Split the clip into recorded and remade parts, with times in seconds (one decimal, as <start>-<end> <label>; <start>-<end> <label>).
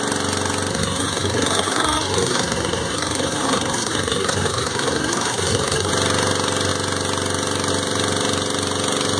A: 0.0-0.7 recorded; 0.7-5.9 remade; 5.9-9.2 recorded